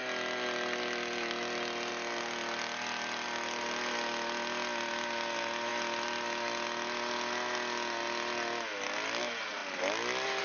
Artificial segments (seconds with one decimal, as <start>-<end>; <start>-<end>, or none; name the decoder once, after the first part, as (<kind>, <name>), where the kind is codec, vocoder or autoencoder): none